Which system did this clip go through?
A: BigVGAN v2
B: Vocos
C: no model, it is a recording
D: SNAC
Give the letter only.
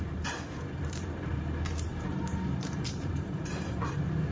A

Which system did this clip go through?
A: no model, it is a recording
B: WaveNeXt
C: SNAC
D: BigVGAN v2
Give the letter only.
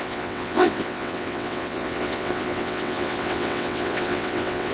B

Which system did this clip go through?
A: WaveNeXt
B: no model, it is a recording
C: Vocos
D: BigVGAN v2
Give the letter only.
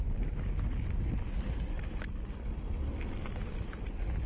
B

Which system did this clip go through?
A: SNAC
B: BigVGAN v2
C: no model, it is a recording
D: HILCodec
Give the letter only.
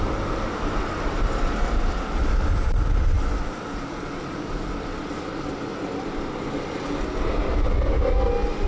C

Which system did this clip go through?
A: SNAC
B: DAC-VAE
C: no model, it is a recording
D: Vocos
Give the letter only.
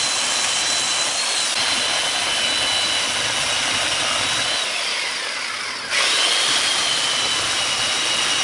C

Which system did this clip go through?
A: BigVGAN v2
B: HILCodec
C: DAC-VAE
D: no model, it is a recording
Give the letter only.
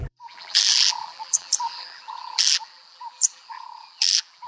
A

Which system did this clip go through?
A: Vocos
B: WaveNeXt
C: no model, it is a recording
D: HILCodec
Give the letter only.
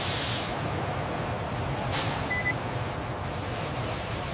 C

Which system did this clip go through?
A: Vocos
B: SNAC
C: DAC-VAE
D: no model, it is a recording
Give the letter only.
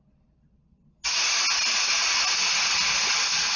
D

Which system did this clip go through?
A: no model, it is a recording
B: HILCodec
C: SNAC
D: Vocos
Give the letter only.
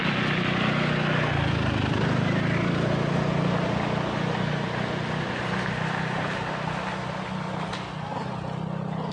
A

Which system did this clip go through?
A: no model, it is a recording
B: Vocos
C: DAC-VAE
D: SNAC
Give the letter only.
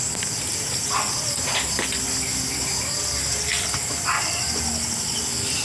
A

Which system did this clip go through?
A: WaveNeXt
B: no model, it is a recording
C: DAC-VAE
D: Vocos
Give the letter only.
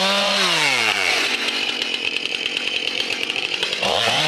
D